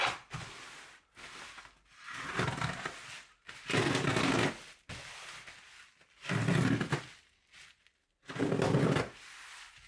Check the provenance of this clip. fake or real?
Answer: real